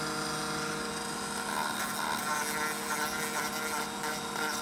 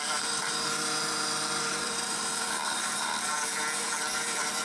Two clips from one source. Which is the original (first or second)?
first